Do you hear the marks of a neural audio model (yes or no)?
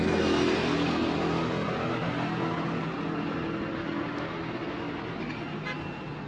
no